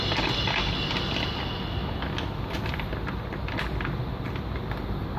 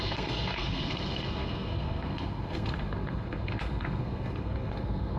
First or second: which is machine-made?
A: second